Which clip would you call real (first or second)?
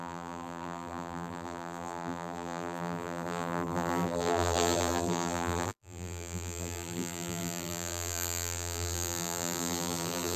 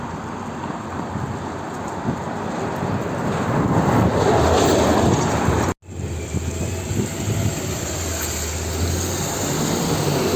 second